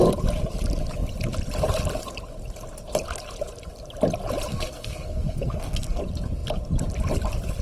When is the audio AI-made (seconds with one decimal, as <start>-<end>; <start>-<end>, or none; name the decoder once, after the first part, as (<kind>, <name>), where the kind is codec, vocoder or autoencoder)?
4.5-6.0 (codec, SNAC)